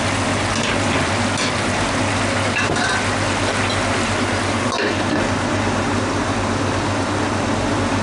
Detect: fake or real real